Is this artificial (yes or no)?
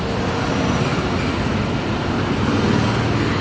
no